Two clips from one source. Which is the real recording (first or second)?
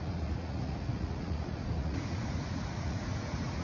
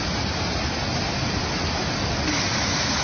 second